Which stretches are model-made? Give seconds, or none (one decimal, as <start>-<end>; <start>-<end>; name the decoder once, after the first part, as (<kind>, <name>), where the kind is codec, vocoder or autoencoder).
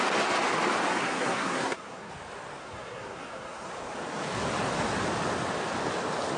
1.0-2.1 (codec, SNAC); 2.6-3.7